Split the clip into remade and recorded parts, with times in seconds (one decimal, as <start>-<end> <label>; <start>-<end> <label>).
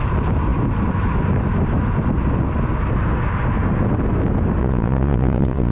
0.0-4.6 recorded; 4.6-5.7 remade